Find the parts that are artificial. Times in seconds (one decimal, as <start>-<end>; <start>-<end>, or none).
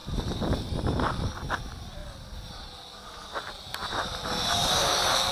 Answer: none